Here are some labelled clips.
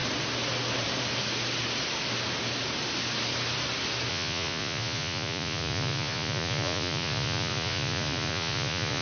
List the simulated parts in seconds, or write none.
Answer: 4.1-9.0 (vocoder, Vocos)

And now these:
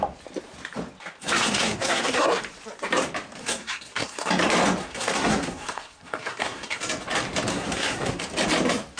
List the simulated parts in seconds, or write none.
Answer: 1.2-2.4 (codec, SNAC); 3.4-4.3; 4.8-6.8; 7.5-8.2

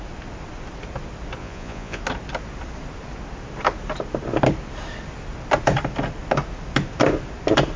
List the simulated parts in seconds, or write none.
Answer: 1.4-2.0 (vocoder, Vocos)

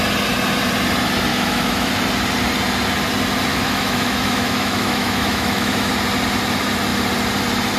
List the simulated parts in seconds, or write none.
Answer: 1.3-1.9 (autoencoder, DAC-VAE); 3.5-5.9

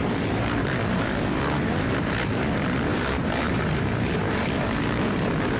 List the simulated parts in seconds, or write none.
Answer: 0.0-0.6 (vocoder, BigVGAN v2); 2.9-5.0

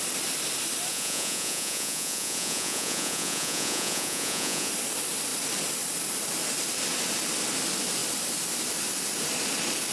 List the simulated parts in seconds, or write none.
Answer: 0.9-4.7 (vocoder, Vocos)